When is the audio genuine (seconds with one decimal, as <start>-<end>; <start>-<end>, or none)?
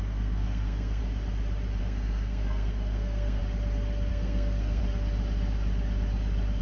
1.0-1.8; 3.4-4.1; 4.8-6.6